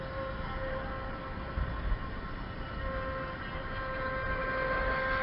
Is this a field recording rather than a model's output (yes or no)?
yes